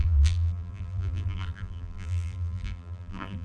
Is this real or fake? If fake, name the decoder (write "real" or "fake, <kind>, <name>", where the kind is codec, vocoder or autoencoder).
fake, vocoder, BigVGAN v2